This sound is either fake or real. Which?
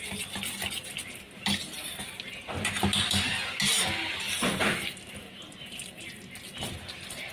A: real